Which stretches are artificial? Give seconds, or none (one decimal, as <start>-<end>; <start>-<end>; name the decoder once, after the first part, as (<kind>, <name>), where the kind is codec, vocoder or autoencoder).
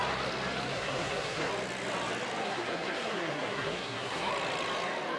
0.7-1.5 (codec, SNAC); 2.4-4.3